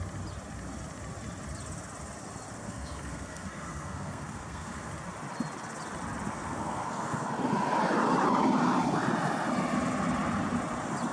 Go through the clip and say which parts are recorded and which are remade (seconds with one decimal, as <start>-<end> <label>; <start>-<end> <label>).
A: 0.0-2.6 recorded; 2.6-4.9 remade; 4.9-6.3 recorded; 6.3-7.3 remade; 7.3-11.1 recorded